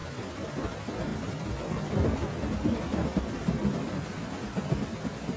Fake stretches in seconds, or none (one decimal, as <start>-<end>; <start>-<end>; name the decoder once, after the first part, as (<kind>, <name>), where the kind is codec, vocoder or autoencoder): none